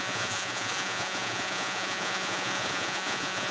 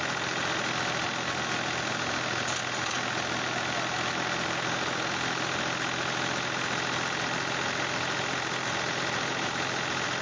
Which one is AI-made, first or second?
first